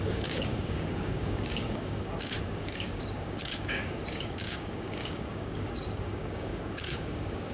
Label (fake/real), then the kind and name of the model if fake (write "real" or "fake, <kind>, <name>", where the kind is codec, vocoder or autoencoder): fake, codec, DAC